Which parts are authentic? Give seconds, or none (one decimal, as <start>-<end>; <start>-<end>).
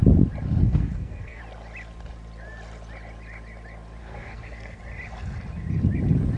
0.0-0.6; 1.4-4.0; 4.8-6.4